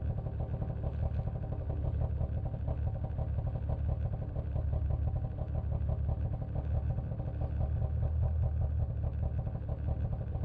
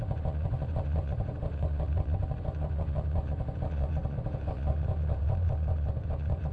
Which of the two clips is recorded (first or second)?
first